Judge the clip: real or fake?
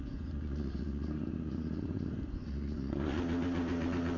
fake